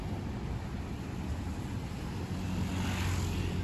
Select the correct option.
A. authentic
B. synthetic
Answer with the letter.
A